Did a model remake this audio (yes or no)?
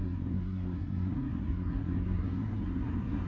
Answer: yes